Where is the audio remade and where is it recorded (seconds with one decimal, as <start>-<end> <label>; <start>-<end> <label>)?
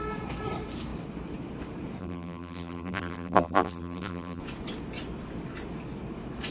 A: 0.0-2.0 recorded; 2.0-4.4 remade; 4.4-6.5 recorded